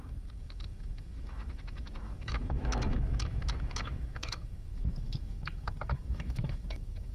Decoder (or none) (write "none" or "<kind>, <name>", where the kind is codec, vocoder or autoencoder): autoencoder, DAC-VAE